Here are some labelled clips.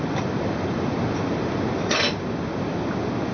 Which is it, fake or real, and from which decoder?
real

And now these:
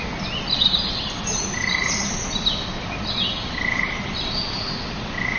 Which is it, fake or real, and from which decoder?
real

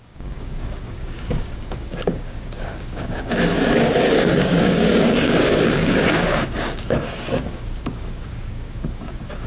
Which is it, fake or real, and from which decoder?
fake, codec, DAC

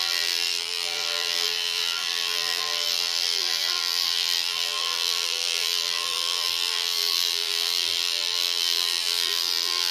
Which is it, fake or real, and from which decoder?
fake, vocoder, BigVGAN v2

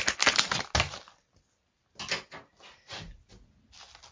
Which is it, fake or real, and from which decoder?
real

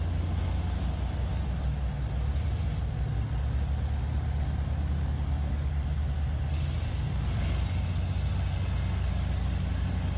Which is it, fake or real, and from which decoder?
real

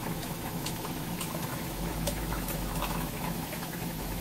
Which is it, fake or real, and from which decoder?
fake, autoencoder, DAC-VAE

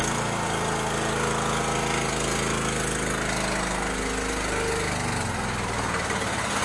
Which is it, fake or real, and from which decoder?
real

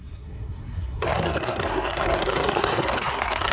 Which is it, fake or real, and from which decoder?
fake, codec, SNAC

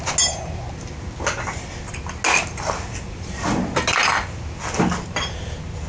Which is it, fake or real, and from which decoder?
real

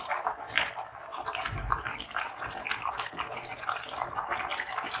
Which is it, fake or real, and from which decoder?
fake, vocoder, BigVGAN v2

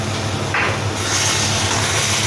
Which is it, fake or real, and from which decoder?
real